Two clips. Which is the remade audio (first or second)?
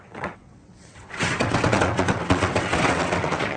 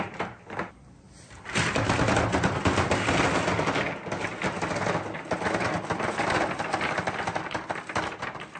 first